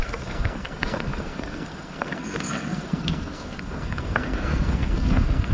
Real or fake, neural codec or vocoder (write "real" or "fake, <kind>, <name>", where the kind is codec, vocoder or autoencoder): fake, codec, SNAC